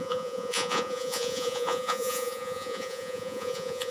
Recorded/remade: remade